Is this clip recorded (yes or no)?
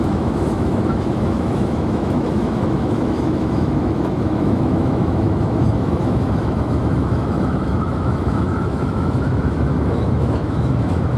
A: no